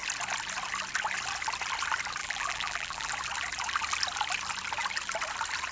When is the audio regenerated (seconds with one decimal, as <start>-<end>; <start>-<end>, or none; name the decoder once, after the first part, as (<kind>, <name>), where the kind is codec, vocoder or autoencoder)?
2.2-3.1 (vocoder, BigVGAN v2)